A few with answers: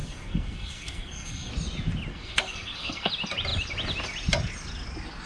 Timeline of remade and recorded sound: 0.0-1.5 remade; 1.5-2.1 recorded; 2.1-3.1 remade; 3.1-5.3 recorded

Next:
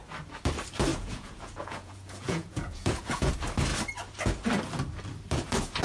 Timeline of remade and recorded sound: 0.0-0.9 recorded; 0.9-3.3 remade; 3.3-5.8 recorded

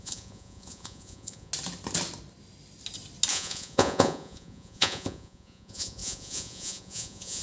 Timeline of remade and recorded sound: 0.0-1.5 remade; 1.5-3.3 recorded; 3.3-7.4 remade

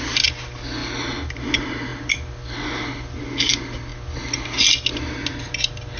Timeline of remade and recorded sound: 0.0-6.0 recorded

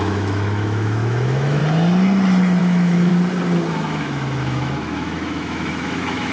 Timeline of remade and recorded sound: 0.0-1.6 remade; 1.6-2.6 recorded; 2.6-3.1 remade; 3.1-3.7 recorded; 3.7-6.3 remade

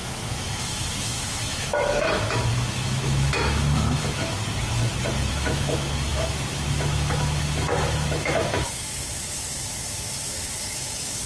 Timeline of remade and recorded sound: 0.0-4.4 remade; 4.4-5.3 recorded; 5.3-11.3 remade